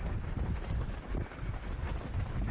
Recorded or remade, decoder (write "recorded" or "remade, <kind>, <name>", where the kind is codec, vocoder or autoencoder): recorded